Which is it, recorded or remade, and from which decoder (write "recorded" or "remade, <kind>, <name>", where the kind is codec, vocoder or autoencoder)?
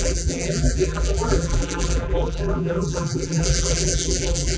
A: remade, vocoder, BigVGAN v2